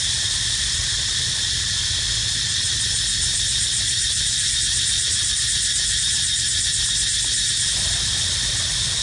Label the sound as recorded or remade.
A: remade